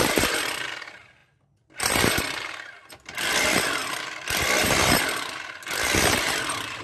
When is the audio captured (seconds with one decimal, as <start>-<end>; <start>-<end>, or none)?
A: 0.0-6.8